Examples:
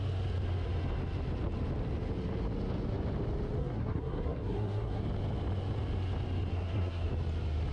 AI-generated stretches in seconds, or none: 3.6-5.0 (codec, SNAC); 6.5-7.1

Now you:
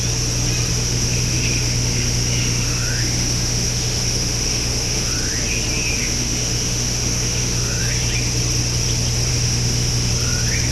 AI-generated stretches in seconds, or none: 0.7-5.1 (autoencoder, DAC-VAE); 6.0-7.8; 9.3-10.1

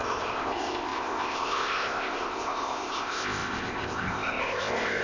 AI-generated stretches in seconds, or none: 0.0-5.0 (codec, ZipCodec)